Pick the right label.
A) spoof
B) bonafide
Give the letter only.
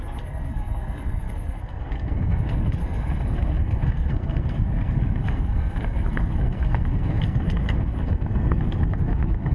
A